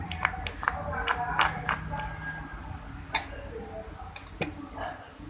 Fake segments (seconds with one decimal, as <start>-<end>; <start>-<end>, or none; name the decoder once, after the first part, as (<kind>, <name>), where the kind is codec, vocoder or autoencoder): none